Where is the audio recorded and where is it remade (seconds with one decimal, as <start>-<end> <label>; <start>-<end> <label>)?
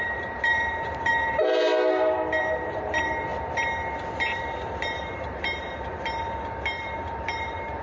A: 0.0-1.7 remade; 1.7-2.4 recorded; 2.4-7.8 remade